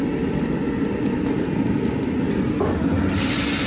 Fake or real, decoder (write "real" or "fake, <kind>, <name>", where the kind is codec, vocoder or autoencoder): real